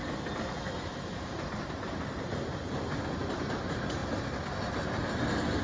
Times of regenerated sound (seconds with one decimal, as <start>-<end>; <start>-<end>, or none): none